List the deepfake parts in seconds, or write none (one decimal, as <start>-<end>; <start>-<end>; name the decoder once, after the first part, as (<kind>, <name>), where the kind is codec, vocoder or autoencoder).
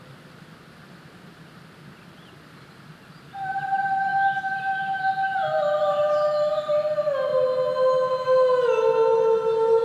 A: 4.1-5.1 (vocoder, BigVGAN v2)